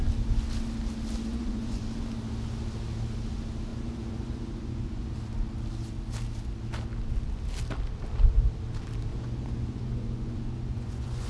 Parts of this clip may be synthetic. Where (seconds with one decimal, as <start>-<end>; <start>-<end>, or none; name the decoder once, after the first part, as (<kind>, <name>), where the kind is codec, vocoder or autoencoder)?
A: 1.3-1.8 (vocoder, Vocos); 3.7-5.1; 9.1-11.3